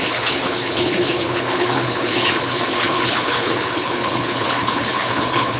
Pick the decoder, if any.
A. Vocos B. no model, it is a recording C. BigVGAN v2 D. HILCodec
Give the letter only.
D